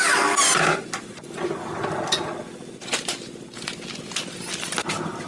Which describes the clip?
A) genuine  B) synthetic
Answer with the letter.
A